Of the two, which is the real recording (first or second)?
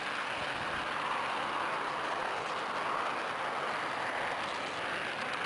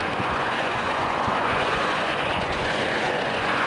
first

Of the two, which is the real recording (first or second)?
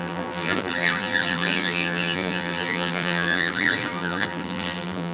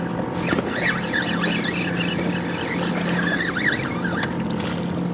second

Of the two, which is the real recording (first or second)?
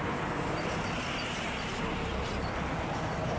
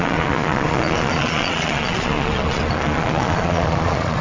first